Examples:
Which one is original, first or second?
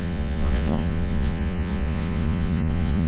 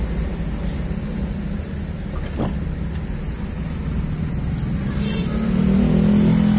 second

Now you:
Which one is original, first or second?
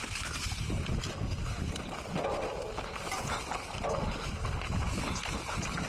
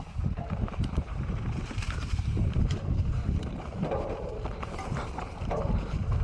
first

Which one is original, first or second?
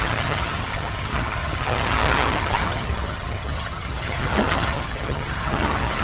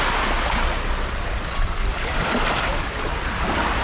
second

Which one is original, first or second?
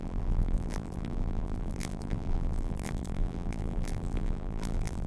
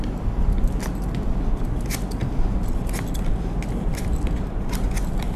second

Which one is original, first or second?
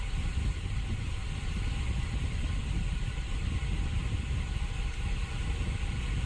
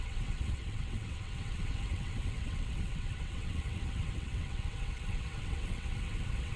first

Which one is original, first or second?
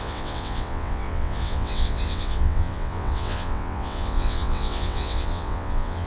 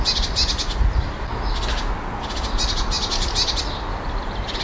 second